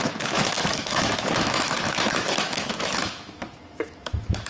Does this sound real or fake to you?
fake